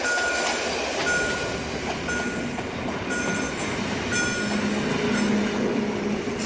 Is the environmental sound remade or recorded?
recorded